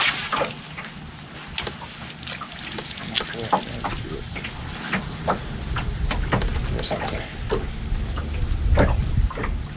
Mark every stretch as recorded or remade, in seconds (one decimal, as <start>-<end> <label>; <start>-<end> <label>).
0.0-9.8 recorded